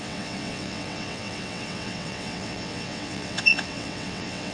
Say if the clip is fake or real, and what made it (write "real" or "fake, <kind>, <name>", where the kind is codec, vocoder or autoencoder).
fake, vocoder, WaveNeXt